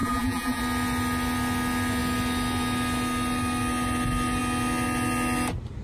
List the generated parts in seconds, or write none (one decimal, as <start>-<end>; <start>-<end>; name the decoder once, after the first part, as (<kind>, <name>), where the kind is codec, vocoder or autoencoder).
0.0-0.6 (vocoder, BigVGAN v2)